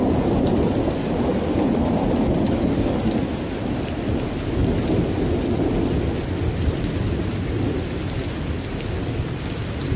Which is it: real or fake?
real